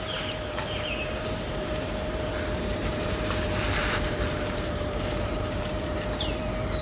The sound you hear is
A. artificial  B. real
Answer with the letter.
A